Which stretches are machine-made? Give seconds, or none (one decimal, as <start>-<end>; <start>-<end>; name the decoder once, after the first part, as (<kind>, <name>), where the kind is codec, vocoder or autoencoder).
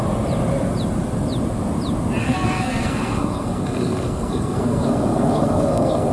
2.2-6.1 (codec, SNAC)